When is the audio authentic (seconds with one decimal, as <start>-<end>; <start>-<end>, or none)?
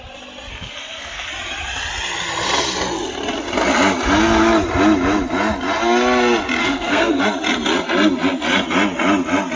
0.0-0.5; 1.3-6.6; 7.2-9.6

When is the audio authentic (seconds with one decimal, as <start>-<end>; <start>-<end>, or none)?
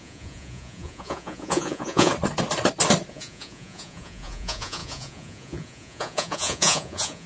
2.1-3.1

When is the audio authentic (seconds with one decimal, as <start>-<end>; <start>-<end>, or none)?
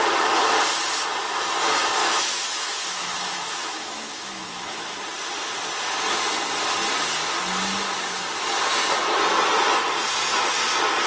0.0-2.0; 5.0-11.1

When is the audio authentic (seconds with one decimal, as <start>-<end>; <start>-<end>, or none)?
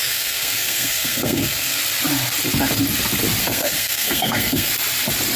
1.8-3.4; 4.7-5.4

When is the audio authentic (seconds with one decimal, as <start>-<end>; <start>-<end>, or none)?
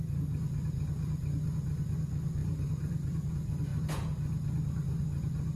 0.0-2.4; 3.3-5.6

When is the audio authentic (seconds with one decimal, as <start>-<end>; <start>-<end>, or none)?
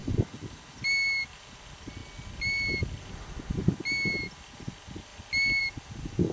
0.0-6.3